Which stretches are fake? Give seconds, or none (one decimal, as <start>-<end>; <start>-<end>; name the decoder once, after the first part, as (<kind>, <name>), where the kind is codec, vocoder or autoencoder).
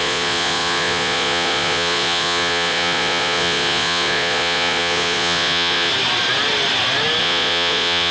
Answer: 0.0-5.9 (vocoder, Vocos); 7.2-8.1